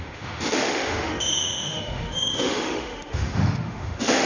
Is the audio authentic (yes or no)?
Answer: no